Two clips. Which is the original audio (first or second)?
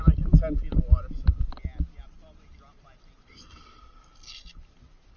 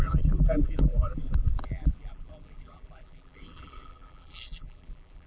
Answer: first